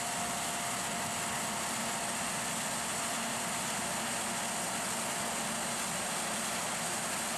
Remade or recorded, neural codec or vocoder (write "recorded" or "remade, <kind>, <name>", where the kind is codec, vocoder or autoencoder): recorded